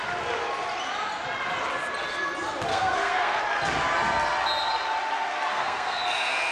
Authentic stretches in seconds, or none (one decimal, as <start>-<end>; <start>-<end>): 0.0-2.7; 3.4-5.5; 6.0-6.5